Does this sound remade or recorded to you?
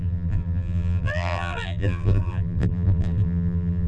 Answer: remade